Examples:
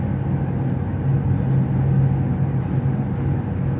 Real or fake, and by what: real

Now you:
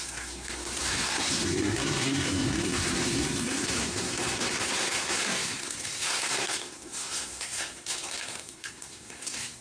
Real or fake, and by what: fake, codec, SNAC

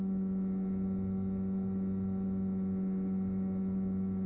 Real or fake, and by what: real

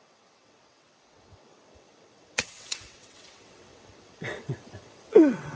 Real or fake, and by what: fake, vocoder, WaveNeXt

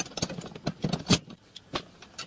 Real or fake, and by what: real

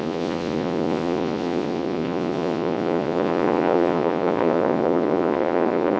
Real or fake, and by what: fake, vocoder, Vocos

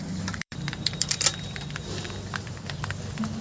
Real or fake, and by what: fake, vocoder, BigVGAN v2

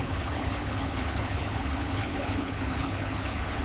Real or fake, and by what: fake, codec, HILCodec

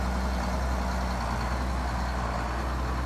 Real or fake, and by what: real